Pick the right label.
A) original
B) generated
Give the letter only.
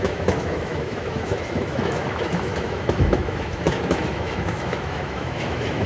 B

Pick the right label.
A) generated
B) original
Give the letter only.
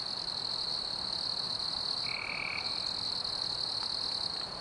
B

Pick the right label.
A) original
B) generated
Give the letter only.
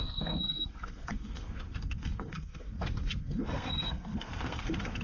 B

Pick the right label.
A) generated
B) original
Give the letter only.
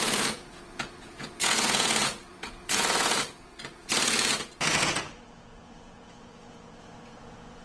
A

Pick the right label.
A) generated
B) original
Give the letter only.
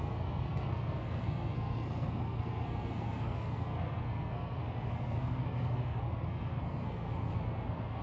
A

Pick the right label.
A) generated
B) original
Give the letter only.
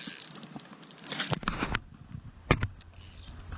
B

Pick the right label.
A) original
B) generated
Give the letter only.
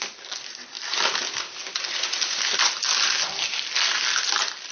A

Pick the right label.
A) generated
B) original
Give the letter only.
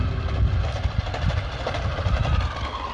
B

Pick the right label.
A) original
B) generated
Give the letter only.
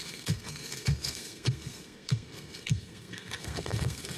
B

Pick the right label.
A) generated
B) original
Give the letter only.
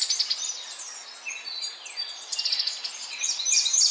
B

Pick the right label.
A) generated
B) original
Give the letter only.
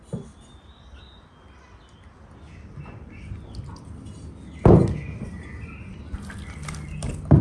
B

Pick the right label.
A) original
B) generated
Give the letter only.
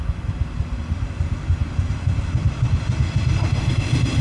A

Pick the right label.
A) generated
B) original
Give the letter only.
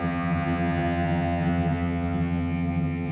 A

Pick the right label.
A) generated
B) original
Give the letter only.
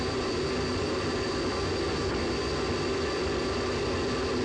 B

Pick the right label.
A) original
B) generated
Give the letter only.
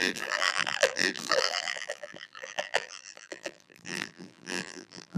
B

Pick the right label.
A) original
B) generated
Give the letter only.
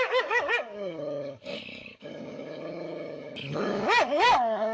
B